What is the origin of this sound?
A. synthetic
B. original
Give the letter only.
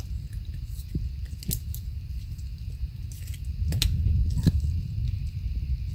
B